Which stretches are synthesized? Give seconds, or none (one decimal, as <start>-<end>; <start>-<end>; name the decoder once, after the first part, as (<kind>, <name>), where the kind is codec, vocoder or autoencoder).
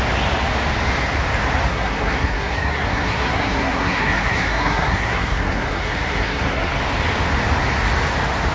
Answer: 1.7-6.7 (codec, SNAC)